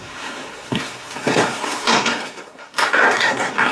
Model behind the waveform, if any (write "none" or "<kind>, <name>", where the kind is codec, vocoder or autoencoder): codec, SNAC